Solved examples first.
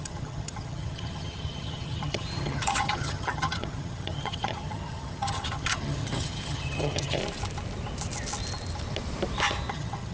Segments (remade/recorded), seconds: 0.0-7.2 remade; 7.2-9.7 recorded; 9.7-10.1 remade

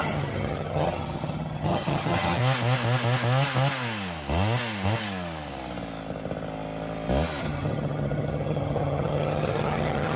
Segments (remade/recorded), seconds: 0.0-2.4 remade; 2.4-7.4 recorded; 7.4-10.2 remade

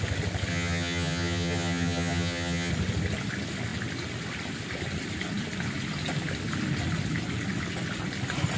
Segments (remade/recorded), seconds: 0.0-0.5 recorded; 0.5-2.7 remade; 2.7-8.6 recorded